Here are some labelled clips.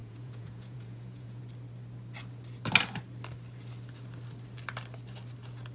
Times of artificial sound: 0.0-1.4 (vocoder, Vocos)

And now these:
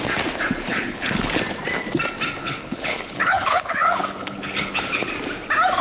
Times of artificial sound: 0.7-1.3 (codec, HILCodec); 2.4-5.1

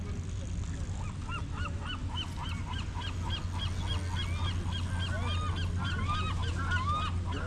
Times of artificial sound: none

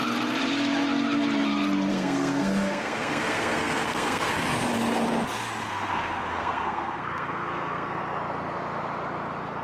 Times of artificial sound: 1.9-4.3 (codec, SNAC); 5.6-8.0

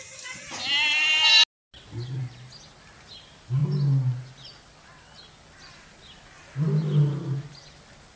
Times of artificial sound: none

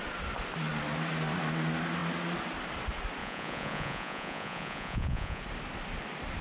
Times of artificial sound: 3.2-5.4 (vocoder, Vocos)

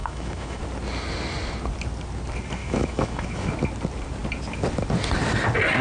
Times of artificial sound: 0.0-0.6 (autoencoder, DAC-VAE); 2.6-3.5

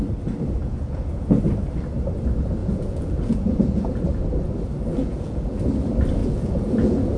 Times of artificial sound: 0.6-1.4 (vocoder, Vocos); 2.6-3.9; 4.9-5.7; 6.2-7.2